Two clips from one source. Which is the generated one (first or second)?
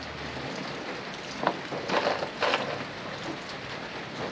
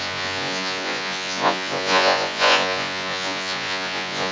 second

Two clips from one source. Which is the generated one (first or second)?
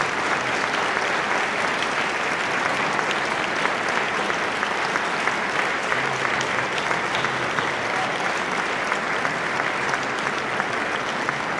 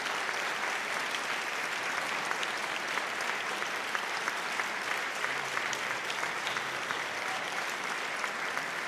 second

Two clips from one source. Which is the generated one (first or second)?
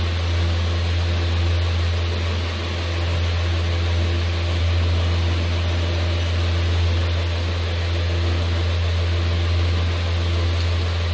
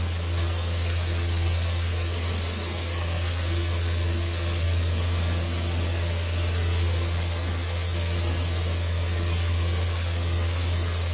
second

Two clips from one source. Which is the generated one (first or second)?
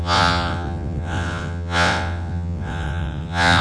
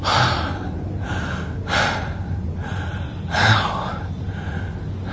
first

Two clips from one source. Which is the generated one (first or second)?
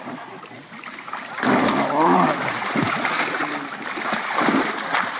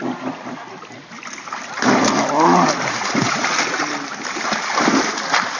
first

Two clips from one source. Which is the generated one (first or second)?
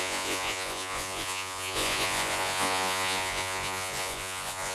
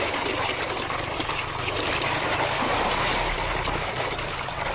first